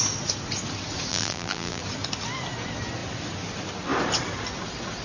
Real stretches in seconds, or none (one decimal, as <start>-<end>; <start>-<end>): 0.0-1.1; 1.8-5.0